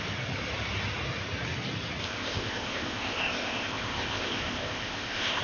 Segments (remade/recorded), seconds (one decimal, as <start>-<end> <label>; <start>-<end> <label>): 0.0-2.0 recorded; 2.0-5.4 remade